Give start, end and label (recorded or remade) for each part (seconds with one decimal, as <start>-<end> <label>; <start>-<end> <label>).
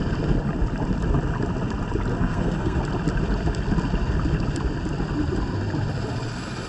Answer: 0.0-2.1 recorded; 2.1-2.8 remade; 2.8-6.7 recorded